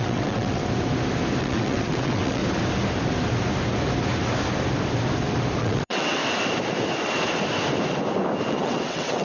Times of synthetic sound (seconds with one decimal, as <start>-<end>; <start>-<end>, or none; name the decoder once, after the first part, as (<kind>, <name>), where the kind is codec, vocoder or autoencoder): 0.0-0.6 (vocoder, WaveNeXt); 1.4-2.4; 5.6-6.2; 8.5-9.2